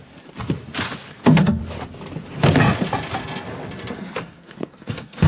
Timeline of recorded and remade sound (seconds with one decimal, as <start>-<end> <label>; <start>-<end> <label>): 0.0-1.1 recorded; 1.1-1.6 remade; 1.6-4.2 recorded; 4.2-5.3 remade